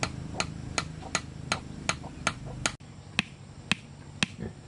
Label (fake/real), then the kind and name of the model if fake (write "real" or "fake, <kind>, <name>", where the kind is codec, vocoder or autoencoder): real